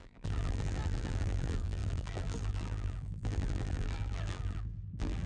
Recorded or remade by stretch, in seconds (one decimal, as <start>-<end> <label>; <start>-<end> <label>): 0.0-5.3 remade